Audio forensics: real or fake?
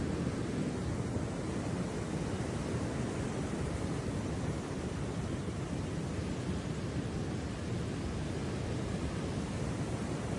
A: real